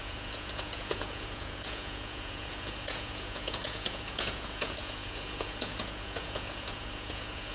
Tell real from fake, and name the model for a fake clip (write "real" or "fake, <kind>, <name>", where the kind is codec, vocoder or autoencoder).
fake, vocoder, Vocos